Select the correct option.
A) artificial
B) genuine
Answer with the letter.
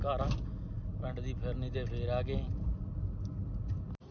B